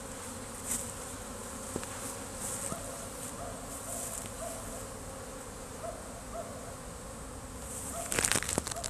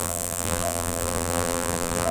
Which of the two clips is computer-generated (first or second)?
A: second